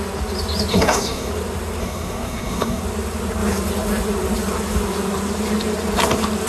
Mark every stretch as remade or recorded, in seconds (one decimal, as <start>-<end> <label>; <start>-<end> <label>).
0.0-0.7 recorded; 0.7-1.3 remade; 1.3-1.8 recorded; 1.8-2.8 remade; 2.8-6.5 recorded